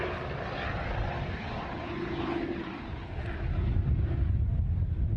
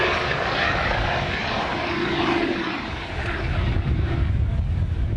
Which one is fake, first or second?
second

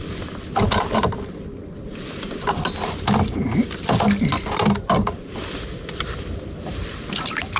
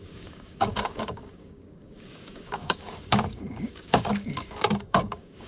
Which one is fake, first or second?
second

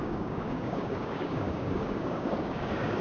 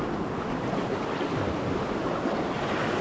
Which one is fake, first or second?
first